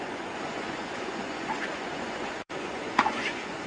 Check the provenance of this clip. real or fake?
fake